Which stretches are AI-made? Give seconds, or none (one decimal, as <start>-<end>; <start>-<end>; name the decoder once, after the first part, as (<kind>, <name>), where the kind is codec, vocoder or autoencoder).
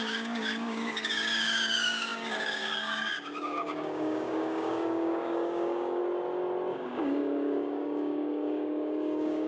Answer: 0.0-6.0 (codec, DAC); 6.7-9.5